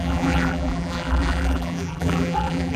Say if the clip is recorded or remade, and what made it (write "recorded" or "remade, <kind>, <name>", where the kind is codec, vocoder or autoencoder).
remade, vocoder, BigVGAN v2